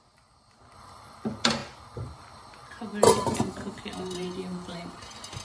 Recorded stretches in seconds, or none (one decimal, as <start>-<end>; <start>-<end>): 0.0-2.9

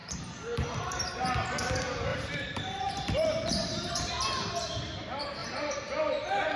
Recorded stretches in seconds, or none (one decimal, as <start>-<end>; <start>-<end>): 1.3-2.1; 4.1-5.4; 6.0-6.6

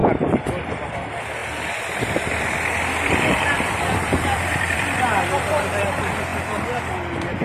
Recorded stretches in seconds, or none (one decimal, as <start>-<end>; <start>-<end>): 0.9-1.4; 5.8-6.3; 7.0-7.4

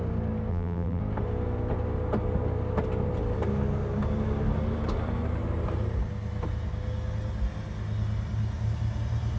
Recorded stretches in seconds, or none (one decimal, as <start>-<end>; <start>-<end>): 0.0-0.5; 1.0-9.4